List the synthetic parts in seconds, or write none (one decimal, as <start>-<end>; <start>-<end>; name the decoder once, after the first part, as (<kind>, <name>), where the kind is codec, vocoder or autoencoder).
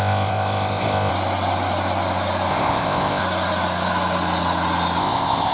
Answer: 0.0-1.1 (codec, ZipCodec); 2.5-3.2; 5.0-5.5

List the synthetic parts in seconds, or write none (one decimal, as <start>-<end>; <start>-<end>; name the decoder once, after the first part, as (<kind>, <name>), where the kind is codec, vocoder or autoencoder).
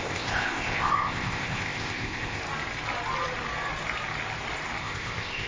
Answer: 0.0-2.4 (codec, ZipCodec); 4.8-5.5